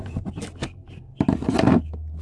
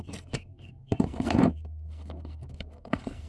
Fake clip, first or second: second